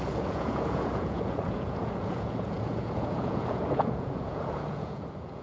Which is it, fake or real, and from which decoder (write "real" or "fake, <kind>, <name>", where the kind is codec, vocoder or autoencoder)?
fake, vocoder, Vocos